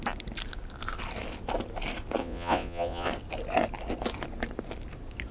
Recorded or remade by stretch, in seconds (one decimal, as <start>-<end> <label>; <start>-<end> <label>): 0.0-2.2 recorded; 2.2-3.1 remade; 3.1-5.3 recorded